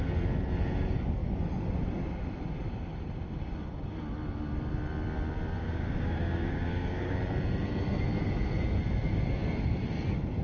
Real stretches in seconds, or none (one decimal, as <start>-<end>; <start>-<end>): 0.0-5.6; 7.2-10.4